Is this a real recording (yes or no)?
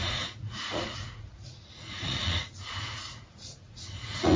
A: no